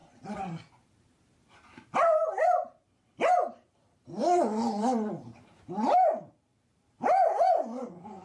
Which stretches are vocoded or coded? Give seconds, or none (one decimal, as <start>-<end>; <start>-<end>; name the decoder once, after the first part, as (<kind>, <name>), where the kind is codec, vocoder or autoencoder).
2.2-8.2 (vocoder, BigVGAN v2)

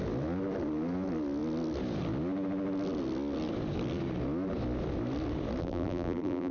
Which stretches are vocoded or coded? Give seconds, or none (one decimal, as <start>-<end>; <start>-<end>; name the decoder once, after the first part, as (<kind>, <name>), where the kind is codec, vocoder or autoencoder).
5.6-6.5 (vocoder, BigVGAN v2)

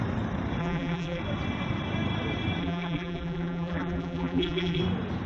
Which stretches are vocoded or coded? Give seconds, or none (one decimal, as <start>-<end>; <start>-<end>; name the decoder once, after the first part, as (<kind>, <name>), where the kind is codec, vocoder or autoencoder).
0.6-1.2 (vocoder, BigVGAN v2); 2.6-4.8

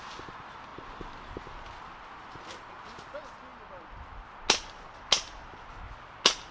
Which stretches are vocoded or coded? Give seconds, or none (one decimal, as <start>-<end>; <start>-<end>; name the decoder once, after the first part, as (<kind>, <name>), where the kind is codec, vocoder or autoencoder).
none